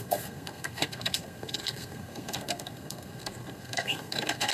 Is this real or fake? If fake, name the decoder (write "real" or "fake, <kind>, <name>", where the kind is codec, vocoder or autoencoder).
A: fake, codec, SNAC